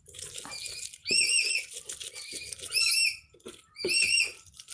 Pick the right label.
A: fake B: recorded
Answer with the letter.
B